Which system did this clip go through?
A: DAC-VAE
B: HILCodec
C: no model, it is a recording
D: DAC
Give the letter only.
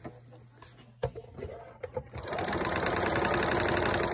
C